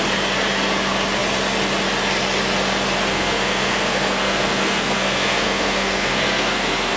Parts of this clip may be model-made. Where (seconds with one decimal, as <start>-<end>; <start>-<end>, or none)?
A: 3.1-7.0